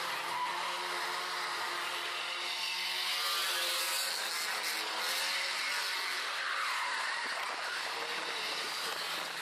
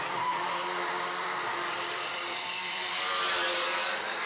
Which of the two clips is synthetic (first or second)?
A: second